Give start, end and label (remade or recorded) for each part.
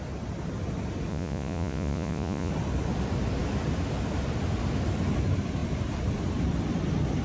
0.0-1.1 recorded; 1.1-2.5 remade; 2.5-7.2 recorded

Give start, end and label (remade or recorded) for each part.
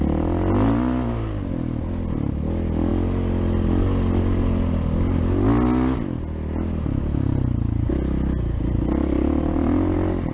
0.0-10.3 recorded